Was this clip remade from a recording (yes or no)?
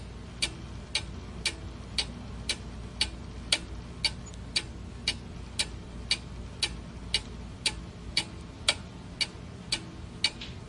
no